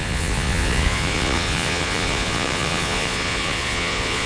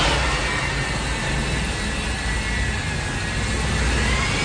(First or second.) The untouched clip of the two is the second